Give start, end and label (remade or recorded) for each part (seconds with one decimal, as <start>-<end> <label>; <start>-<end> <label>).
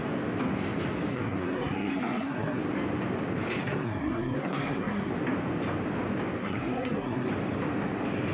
0.0-1.1 recorded; 1.1-2.6 remade; 2.6-3.6 recorded; 3.6-5.1 remade; 5.1-6.4 recorded; 6.4-7.3 remade; 7.3-8.3 recorded